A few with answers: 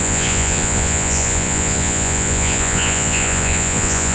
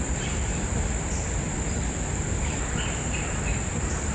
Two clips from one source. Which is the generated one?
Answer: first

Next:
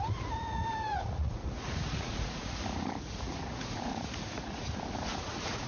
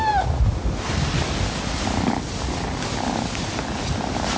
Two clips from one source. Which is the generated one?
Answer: first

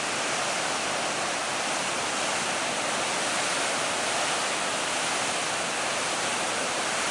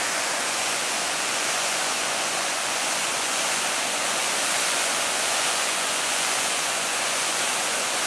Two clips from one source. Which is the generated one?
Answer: second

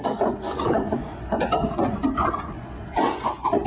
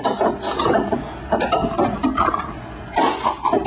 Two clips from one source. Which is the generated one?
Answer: first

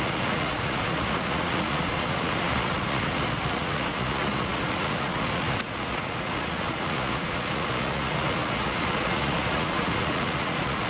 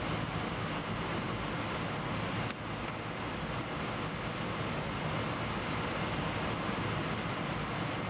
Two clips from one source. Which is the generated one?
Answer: first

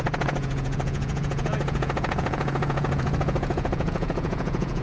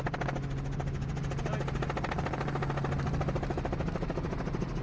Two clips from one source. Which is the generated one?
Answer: first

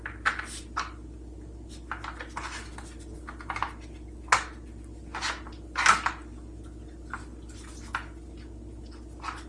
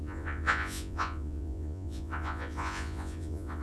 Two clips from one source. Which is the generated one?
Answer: second